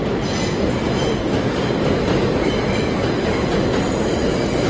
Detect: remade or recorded recorded